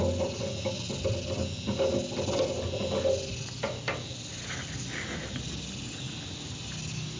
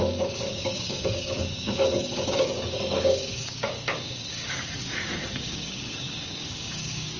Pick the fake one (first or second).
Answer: second